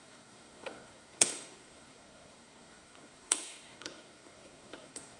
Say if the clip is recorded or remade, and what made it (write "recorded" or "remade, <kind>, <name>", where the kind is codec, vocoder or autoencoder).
remade, codec, SNAC